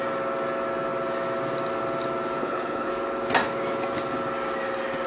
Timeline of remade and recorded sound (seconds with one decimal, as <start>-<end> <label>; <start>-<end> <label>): 0.0-2.4 recorded; 2.4-2.9 remade; 2.9-5.1 recorded